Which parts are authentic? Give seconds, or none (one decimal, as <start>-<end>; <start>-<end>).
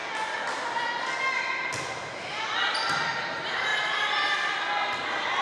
0.0-5.4